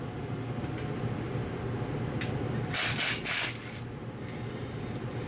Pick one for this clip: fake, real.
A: real